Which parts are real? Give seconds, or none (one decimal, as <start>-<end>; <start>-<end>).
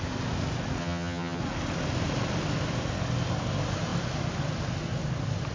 0.0-0.8; 1.4-5.5